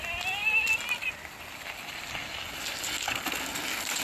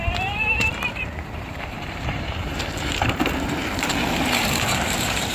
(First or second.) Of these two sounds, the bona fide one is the first